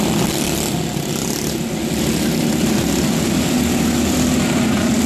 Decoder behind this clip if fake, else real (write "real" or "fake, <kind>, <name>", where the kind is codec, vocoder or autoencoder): real